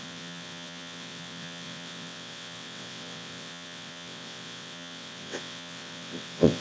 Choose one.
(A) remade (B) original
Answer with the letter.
A